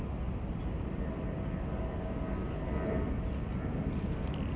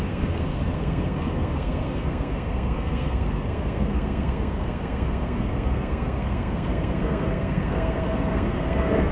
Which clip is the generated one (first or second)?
second